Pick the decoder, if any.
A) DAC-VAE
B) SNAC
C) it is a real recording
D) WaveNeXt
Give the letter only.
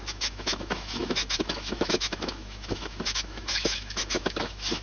A